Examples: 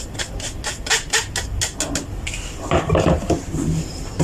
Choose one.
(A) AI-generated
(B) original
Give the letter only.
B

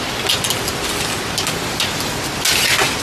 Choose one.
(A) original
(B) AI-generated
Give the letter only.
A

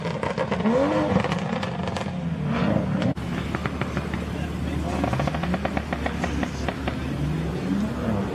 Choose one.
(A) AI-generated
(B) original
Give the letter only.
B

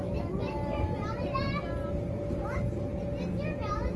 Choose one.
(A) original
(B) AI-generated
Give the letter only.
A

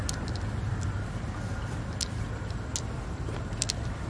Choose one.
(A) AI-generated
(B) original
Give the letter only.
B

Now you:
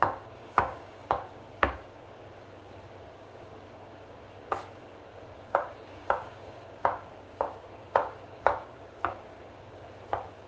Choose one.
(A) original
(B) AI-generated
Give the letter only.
B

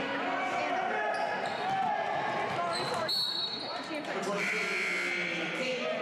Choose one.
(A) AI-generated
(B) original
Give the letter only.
B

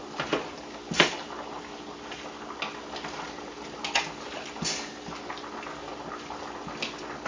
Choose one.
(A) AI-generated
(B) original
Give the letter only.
B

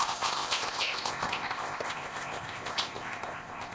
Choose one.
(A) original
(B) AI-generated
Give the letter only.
B